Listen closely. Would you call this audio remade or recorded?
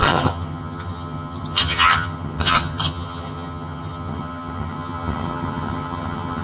remade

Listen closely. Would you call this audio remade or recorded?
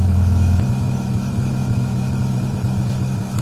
remade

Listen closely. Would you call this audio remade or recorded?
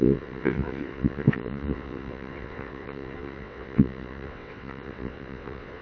remade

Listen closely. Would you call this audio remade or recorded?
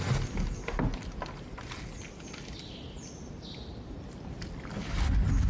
recorded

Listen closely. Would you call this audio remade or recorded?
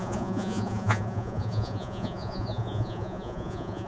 remade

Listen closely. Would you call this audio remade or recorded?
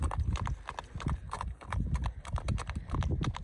recorded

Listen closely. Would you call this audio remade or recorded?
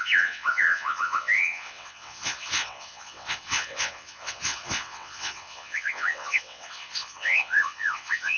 remade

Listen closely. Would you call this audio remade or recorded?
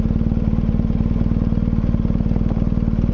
recorded